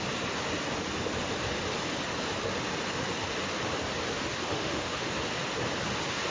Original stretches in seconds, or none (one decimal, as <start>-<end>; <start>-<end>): 0.0-4.5; 5.1-6.3